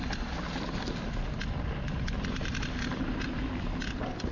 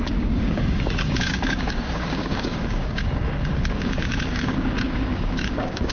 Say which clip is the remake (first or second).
second